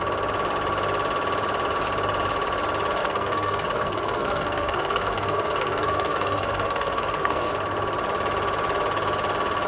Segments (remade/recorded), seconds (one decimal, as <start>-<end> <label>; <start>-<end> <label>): 0.0-3.0 recorded; 3.0-7.5 remade; 7.5-9.7 recorded